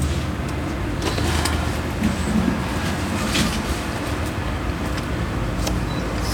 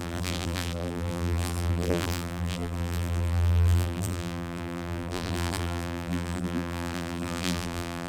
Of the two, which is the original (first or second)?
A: first